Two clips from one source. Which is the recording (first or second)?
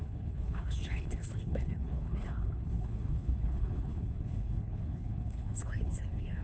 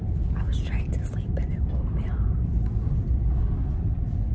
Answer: second